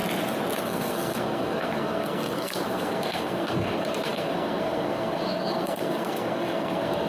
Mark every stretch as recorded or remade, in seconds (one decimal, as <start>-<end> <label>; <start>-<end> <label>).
0.0-0.6 recorded; 0.6-7.1 remade

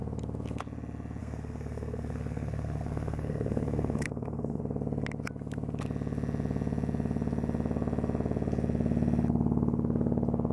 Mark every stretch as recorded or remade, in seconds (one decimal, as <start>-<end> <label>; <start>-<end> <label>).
0.0-1.2 recorded; 1.2-4.6 remade; 4.6-10.5 recorded

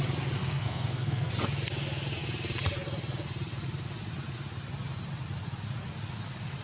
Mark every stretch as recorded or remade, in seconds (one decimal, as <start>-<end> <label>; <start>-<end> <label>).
0.0-0.4 recorded; 0.4-1.3 remade; 1.3-6.6 recorded

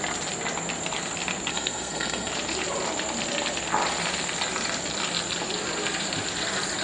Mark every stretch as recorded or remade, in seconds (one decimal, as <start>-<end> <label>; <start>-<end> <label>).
0.0-1.5 recorded; 1.5-2.3 remade; 2.3-6.8 recorded

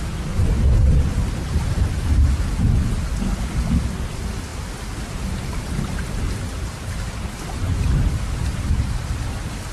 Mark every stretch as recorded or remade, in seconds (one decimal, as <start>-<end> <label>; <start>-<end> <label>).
0.0-9.7 recorded

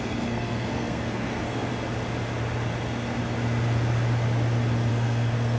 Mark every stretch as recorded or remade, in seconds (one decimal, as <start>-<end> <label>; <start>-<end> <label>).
0.0-1.7 remade; 1.7-4.9 recorded; 4.9-5.6 remade

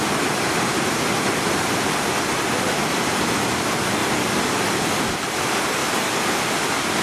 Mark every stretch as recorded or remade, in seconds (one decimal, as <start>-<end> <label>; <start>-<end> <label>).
0.0-7.0 recorded